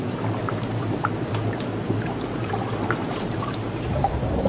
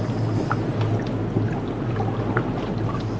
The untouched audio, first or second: second